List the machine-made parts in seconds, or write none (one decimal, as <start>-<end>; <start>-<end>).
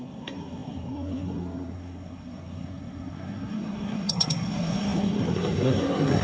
0.0-6.2